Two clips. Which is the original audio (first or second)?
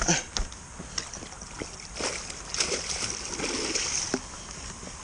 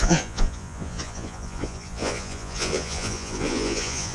first